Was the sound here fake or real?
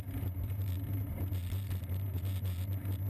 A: real